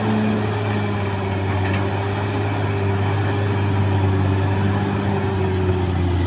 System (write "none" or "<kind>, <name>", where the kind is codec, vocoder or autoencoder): none